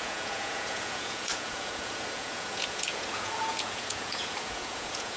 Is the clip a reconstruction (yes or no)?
yes